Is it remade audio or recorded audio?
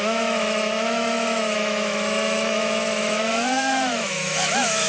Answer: remade